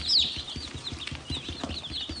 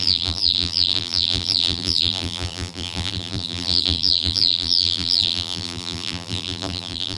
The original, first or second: first